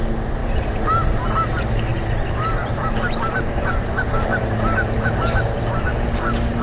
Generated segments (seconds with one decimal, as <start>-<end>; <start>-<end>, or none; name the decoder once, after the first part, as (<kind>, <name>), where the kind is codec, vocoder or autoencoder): 0.4-1.2 (vocoder, BigVGAN v2); 1.9-5.9